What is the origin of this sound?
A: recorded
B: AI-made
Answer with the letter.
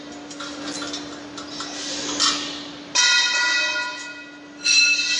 A